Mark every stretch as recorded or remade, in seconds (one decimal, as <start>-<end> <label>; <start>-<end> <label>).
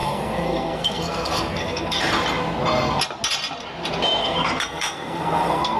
0.0-2.0 remade; 2.0-4.2 recorded; 4.2-5.8 remade